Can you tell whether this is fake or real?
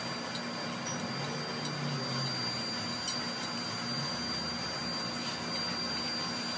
real